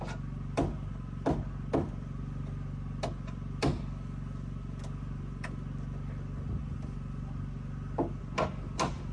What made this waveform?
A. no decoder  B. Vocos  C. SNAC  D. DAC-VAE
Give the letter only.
A